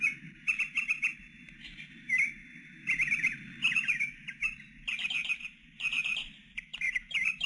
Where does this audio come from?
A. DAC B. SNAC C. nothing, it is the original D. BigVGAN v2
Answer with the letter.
D